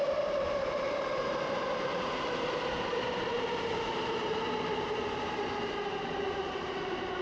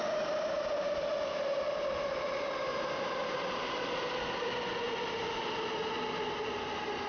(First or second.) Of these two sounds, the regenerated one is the first